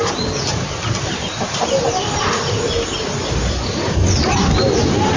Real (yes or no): yes